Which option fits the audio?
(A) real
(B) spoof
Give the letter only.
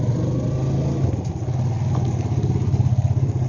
A